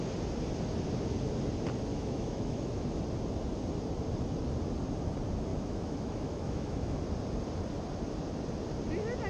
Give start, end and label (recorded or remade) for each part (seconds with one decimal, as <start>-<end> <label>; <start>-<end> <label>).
0.0-1.9 recorded; 1.9-3.0 remade; 3.0-5.5 recorded; 5.5-7.0 remade; 7.0-9.3 recorded